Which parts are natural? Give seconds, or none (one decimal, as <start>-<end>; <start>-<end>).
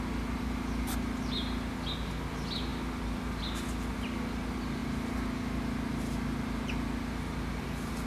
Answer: 0.0-8.1